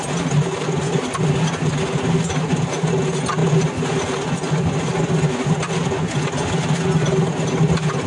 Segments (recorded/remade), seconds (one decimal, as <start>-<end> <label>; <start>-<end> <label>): 0.0-8.1 recorded